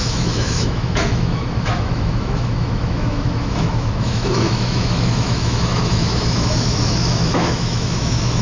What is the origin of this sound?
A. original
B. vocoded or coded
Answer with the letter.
B